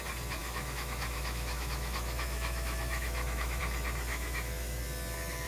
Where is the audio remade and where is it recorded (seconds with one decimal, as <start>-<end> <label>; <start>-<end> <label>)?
0.0-0.4 recorded; 0.4-3.6 remade; 3.6-4.1 recorded; 4.1-4.8 remade; 4.8-5.5 recorded

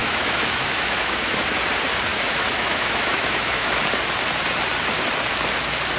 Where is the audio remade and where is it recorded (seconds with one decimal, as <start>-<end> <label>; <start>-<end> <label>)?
0.0-1.3 remade; 1.3-2.1 recorded; 2.1-3.8 remade; 3.8-6.0 recorded

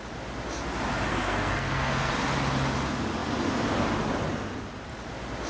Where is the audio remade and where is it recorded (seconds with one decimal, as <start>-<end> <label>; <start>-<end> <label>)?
0.0-1.1 recorded; 1.1-2.1 remade; 2.1-5.5 recorded

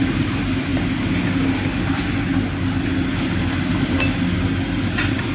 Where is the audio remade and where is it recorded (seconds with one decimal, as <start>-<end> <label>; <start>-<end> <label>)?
0.0-5.3 recorded